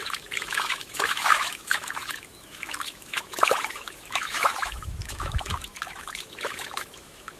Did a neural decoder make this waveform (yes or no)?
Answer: yes